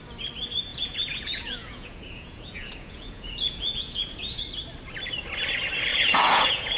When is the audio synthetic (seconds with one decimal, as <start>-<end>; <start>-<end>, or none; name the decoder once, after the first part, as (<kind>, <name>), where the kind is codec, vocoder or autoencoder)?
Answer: 0.7-4.4 (vocoder, Vocos); 5.9-6.8